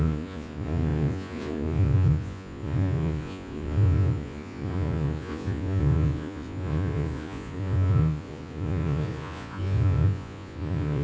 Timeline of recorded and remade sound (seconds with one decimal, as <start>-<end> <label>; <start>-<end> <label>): 0.0-11.0 remade